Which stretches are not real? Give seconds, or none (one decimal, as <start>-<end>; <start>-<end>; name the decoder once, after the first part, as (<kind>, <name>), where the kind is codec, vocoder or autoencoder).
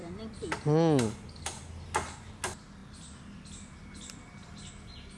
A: none